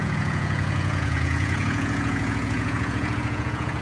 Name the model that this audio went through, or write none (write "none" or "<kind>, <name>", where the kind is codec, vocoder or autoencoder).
vocoder, Vocos